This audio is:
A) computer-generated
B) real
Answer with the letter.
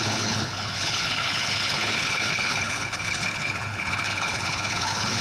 A